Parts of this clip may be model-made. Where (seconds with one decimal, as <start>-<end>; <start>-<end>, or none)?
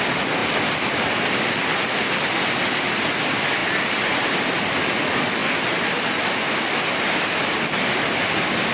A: none